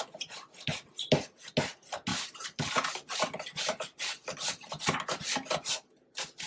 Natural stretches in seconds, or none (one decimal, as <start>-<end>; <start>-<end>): 0.0-2.1; 4.8-6.5